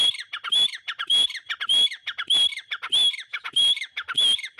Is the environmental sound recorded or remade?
remade